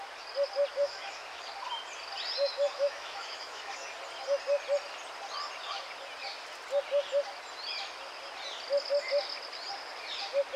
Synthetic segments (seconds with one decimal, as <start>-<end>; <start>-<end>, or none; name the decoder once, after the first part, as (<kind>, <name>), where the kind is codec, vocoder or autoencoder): 0.8-1.4 (autoencoder, DAC-VAE); 2.7-3.7